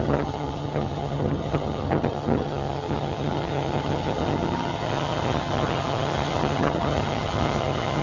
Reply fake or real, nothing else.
fake